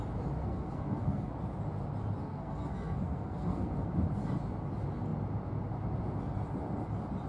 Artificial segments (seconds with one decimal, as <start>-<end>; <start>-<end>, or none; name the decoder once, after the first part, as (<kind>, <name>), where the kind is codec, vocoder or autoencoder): 0.4-1.3 (codec, SNAC); 2.2-3.9